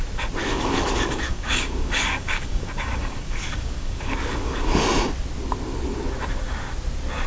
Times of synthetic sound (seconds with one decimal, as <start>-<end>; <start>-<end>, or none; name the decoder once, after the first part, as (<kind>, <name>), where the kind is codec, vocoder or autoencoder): 0.4-4.8 (codec, DAC)